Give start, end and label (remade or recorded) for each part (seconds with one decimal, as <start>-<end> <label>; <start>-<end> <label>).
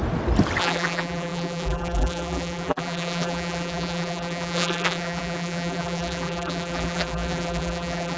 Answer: 0.0-0.6 recorded; 0.6-8.2 remade